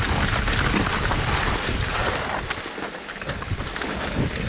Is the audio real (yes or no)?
yes